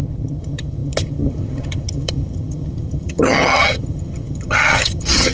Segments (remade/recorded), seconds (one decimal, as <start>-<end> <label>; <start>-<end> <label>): 0.0-5.3 remade